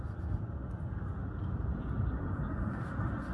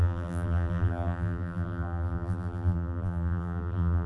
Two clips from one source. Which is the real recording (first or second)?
first